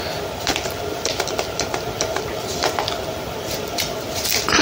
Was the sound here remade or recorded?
recorded